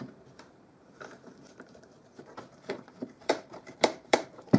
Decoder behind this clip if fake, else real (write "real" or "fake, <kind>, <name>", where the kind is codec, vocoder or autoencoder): fake, vocoder, BigVGAN v2